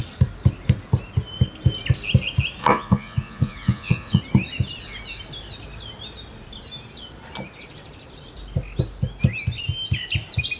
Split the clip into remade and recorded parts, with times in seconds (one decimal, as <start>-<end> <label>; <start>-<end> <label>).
0.0-2.6 recorded; 2.6-4.2 remade; 4.2-10.6 recorded